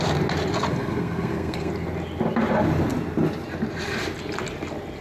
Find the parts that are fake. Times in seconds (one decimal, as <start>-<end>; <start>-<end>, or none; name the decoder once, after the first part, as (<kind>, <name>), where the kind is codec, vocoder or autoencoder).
0.7-1.7 (codec, SNAC)